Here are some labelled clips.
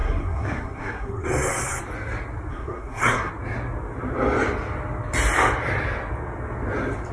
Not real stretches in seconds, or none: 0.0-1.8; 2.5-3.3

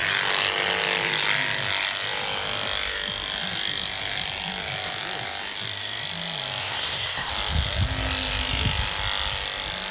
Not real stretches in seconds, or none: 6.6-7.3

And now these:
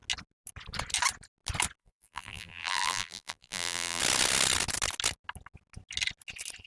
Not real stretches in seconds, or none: 1.8-4.0

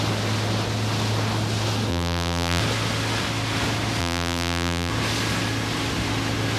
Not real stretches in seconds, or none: 1.9-2.6; 4.0-4.9

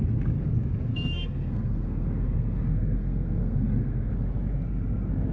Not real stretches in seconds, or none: 0.9-4.1

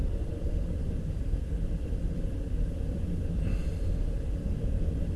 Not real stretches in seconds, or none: none

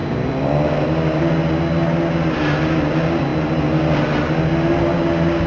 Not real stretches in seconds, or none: none

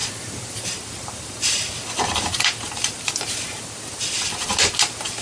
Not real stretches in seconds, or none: 0.0-3.1